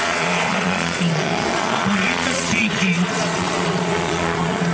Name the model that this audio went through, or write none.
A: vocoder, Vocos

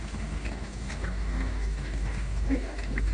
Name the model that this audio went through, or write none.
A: codec, DAC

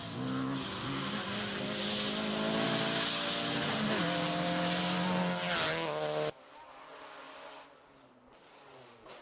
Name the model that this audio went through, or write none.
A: none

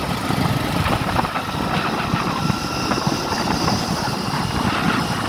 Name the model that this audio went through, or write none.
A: none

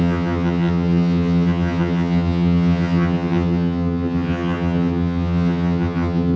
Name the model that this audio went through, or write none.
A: vocoder, HiFi-GAN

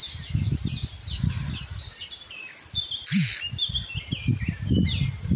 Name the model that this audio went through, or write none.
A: none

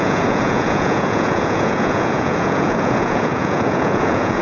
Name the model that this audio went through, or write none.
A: vocoder, Vocos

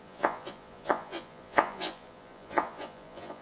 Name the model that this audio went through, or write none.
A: vocoder, Vocos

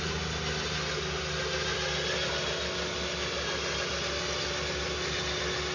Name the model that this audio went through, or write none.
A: none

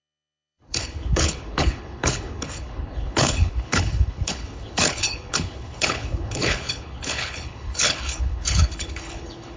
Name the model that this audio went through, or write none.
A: codec, HILCodec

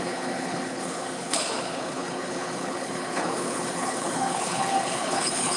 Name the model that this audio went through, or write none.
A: codec, HILCodec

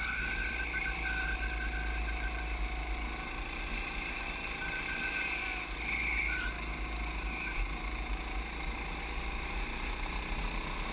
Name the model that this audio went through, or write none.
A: none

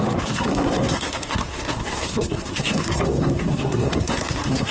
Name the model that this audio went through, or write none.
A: codec, SNAC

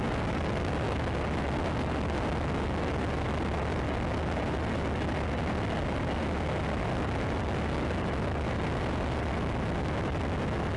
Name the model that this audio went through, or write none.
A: none